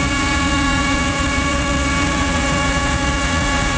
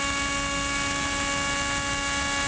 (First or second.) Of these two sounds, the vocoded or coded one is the first